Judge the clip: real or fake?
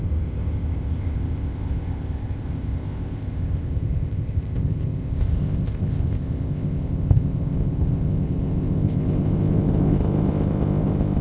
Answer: fake